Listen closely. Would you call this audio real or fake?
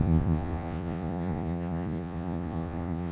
fake